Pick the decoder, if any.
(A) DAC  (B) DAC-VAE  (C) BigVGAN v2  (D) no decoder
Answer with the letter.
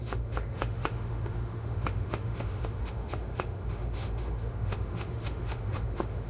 B